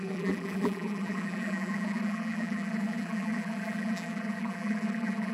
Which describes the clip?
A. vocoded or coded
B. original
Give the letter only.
A